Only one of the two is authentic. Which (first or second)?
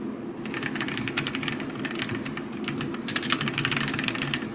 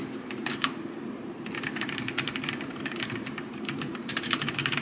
first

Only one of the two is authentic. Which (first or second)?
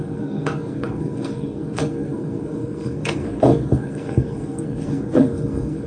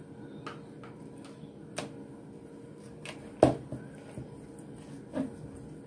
second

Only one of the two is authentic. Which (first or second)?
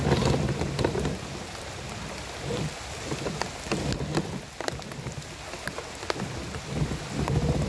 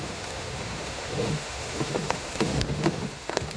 first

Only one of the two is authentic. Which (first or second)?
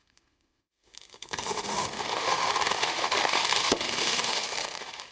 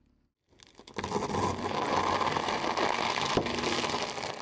second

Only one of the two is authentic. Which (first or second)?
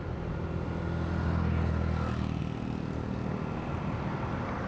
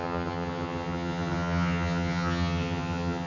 first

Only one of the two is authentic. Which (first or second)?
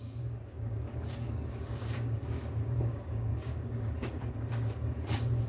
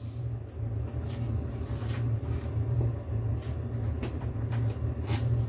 second